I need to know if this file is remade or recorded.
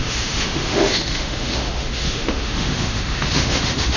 remade